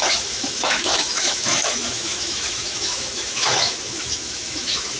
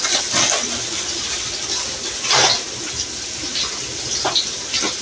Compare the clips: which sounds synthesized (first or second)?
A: first